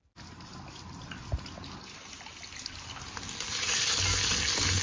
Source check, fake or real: real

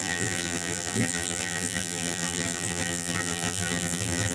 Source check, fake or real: fake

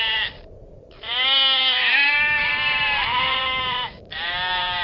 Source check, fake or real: fake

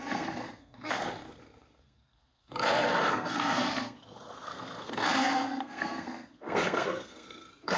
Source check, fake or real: fake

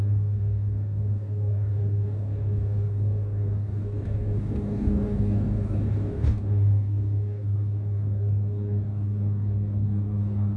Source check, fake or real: fake